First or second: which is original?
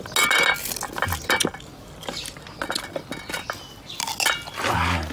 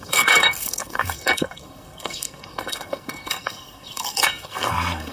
first